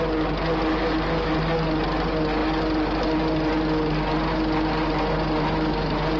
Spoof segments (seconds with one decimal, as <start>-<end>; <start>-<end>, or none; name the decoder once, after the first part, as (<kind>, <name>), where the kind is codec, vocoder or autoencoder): none